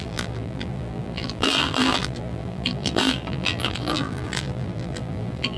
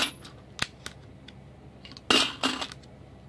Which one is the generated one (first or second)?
first